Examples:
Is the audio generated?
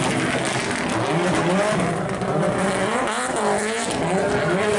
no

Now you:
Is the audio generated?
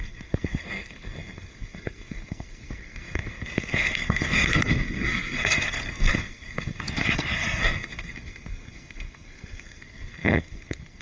yes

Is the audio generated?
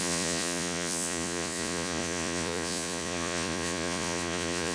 yes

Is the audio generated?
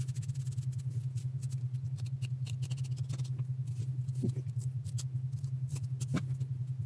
no